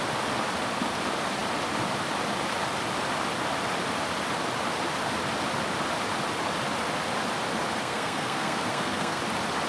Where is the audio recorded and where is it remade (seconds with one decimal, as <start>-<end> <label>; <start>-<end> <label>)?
0.0-7.8 recorded; 7.8-9.2 remade; 9.2-9.7 recorded